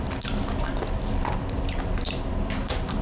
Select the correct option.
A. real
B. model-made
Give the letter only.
B